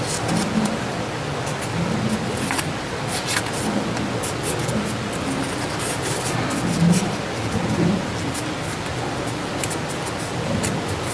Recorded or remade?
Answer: recorded